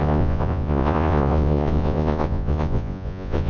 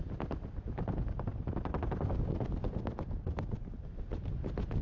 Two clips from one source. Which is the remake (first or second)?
first